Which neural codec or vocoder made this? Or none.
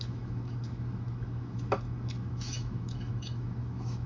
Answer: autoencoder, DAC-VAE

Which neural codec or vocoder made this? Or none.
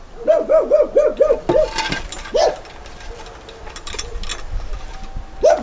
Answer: none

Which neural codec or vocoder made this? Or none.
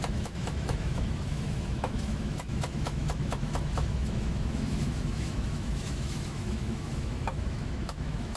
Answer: autoencoder, DAC-VAE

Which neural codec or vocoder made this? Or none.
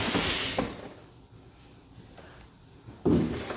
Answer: none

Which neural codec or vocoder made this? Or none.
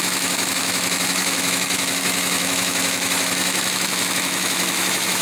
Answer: autoencoder, DAC-VAE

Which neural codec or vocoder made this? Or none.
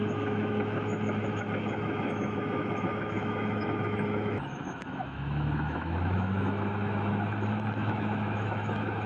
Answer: autoencoder, DAC-VAE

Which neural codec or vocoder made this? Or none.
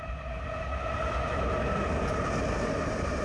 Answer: none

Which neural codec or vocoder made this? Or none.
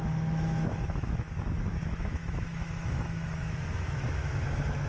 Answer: autoencoder, DAC-VAE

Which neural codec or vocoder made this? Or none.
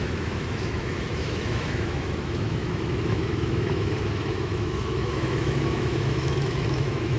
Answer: autoencoder, DAC-VAE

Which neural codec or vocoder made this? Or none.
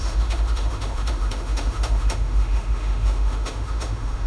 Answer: autoencoder, DAC-VAE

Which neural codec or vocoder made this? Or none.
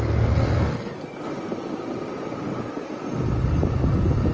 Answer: none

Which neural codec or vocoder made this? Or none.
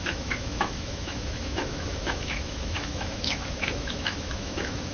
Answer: autoencoder, DAC-VAE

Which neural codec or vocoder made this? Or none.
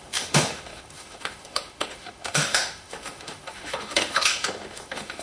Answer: autoencoder, DAC-VAE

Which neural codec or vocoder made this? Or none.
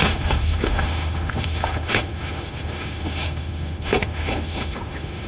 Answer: autoencoder, DAC-VAE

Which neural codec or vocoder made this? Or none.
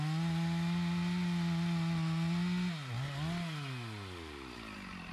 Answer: none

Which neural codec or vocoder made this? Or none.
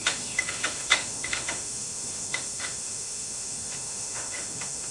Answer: autoencoder, DAC-VAE